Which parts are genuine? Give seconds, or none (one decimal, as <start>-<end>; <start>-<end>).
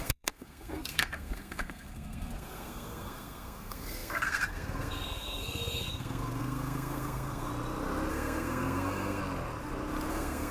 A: 7.5-8.1; 9.2-10.1